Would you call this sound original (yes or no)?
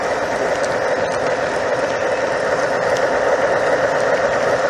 yes